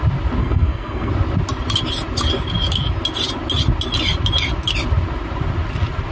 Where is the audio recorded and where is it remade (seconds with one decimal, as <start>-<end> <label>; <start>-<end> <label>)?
0.0-0.4 recorded; 0.4-1.1 remade; 1.1-6.1 recorded